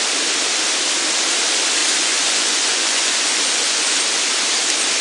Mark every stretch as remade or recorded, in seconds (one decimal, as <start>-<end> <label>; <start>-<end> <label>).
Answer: 0.0-1.8 recorded; 1.8-4.0 remade; 4.0-5.0 recorded